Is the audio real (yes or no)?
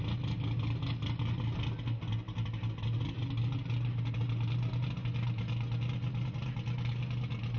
yes